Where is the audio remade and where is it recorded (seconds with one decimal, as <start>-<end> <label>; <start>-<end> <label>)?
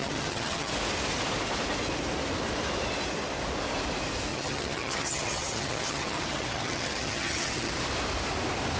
0.0-0.7 remade; 0.7-4.3 recorded; 4.3-7.7 remade; 7.7-8.8 recorded